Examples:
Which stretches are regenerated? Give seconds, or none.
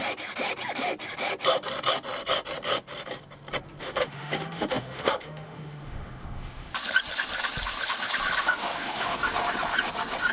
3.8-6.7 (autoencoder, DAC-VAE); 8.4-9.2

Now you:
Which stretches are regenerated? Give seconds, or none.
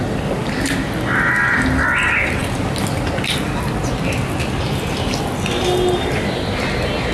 none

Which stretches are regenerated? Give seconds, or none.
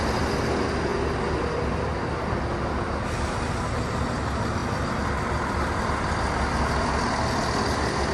none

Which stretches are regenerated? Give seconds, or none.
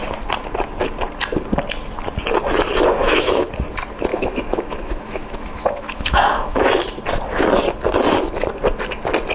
3.0-3.5 (autoencoder, DAC-VAE); 4.1-6.7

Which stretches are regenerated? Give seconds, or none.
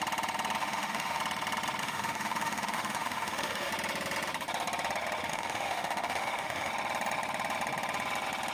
0.6-1.2 (autoencoder, DAC-VAE); 1.8-3.7; 5.3-6.7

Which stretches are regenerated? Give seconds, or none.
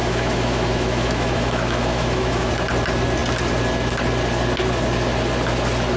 0.0-2.5 (autoencoder, DAC-VAE)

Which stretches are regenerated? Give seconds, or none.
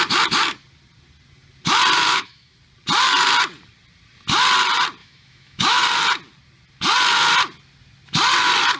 2.1-2.6 (autoencoder, DAC-VAE); 5.0-5.8